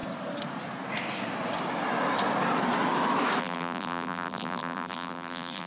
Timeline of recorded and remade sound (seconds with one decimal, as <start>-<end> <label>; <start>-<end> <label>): 0.0-3.4 recorded; 3.4-5.7 remade